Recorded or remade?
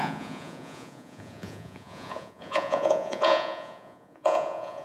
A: remade